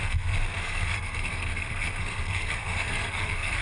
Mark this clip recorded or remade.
remade